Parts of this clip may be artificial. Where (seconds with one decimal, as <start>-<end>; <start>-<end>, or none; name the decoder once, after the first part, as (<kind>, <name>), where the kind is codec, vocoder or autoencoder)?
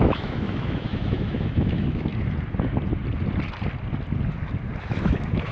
0.0-2.1 (autoencoder, DAC-VAE); 4.8-5.5